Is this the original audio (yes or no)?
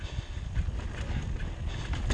yes